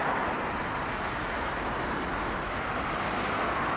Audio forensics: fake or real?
real